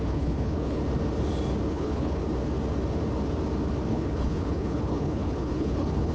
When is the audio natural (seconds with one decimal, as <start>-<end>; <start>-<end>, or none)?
0.8-1.7; 2.2-3.9